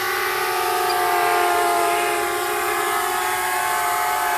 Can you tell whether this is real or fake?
real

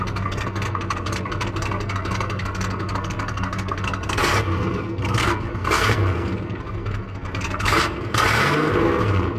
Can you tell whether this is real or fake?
fake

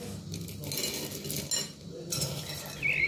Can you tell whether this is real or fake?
real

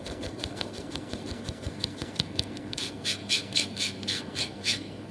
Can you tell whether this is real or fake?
fake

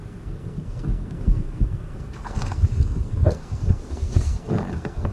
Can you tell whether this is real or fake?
fake